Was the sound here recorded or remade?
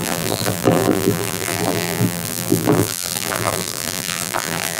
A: remade